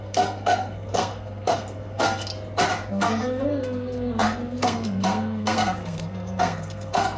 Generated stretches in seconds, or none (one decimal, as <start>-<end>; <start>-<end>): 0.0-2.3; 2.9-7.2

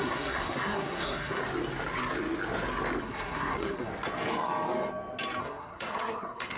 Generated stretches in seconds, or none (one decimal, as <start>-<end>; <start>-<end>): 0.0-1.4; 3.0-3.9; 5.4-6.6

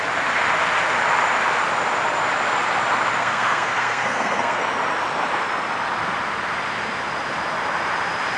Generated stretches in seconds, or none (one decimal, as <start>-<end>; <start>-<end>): 3.2-4.6